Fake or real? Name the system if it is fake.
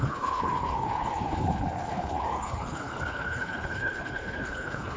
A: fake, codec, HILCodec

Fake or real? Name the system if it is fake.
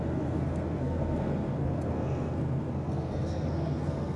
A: fake, codec, SNAC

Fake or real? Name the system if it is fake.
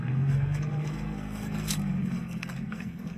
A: fake, codec, SNAC